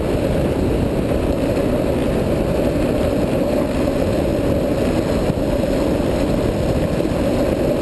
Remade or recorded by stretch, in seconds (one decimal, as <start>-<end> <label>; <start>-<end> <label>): 0.0-7.8 recorded